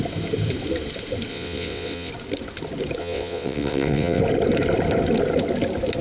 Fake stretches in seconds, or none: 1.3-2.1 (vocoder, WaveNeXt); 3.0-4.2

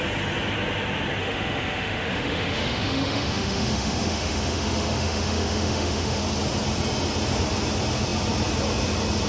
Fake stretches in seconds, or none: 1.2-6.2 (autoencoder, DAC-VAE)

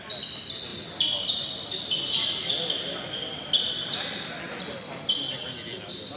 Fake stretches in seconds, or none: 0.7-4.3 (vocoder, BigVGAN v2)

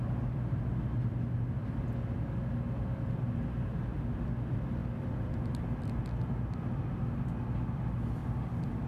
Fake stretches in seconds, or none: 4.8-6.0 (vocoder, BigVGAN v2)